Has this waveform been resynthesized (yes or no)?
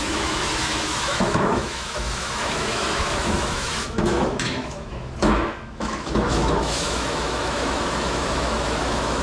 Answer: yes